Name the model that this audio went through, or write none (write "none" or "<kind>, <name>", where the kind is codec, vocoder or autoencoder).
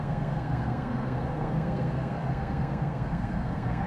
codec, SNAC